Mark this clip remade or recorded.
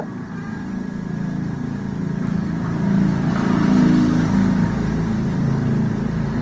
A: recorded